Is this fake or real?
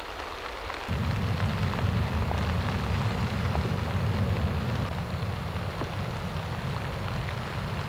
real